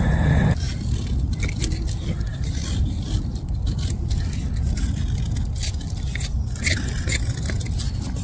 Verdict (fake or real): real